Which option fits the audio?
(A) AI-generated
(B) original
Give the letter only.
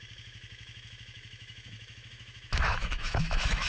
A